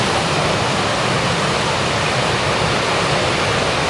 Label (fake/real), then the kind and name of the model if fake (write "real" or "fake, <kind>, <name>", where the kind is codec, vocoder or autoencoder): real